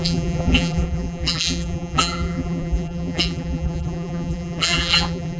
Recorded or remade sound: remade